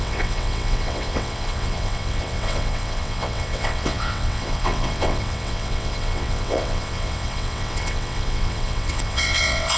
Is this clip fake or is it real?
fake